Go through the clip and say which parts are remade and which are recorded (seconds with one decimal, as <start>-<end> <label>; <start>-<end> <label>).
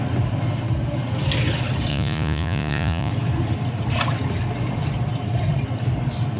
0.0-1.9 recorded; 1.9-3.1 remade; 3.1-6.4 recorded